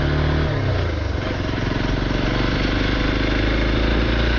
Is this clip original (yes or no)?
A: yes